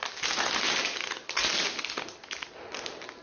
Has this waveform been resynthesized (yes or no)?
no